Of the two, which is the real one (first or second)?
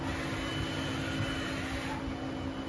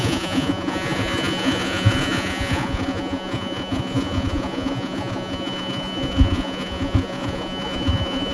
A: first